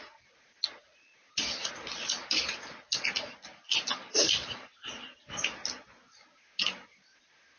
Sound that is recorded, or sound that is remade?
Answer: recorded